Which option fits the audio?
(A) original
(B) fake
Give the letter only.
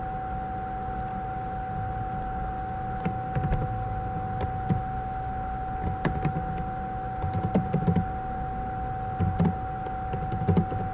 A